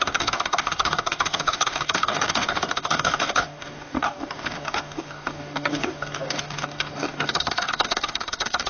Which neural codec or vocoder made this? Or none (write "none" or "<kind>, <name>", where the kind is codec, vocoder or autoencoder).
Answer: codec, DAC